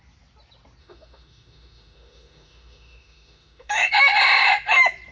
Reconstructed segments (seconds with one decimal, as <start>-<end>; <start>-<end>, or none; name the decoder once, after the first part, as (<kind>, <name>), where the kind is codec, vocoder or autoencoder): 0.8-3.9 (autoencoder, DAC-VAE)